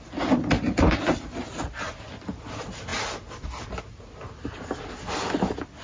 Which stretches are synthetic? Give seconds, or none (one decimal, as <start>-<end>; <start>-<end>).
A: none